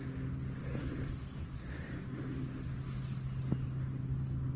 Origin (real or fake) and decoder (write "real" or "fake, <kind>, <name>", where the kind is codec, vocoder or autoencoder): real